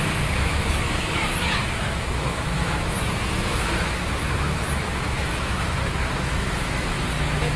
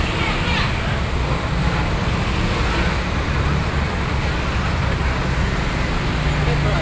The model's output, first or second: first